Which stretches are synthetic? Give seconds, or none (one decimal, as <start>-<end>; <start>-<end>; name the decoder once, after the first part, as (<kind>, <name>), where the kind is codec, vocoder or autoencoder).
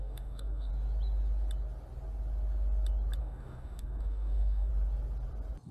0.0-0.7 (codec, DAC); 3.2-4.7